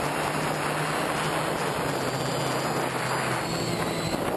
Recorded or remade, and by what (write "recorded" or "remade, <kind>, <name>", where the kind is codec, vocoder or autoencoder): recorded